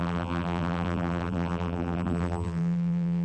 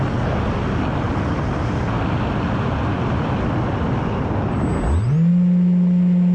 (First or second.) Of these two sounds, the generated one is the first